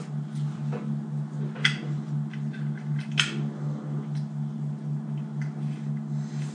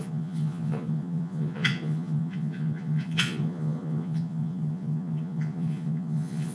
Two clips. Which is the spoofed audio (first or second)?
second